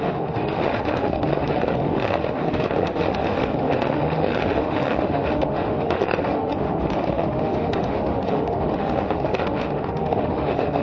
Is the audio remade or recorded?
remade